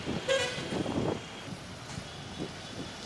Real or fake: real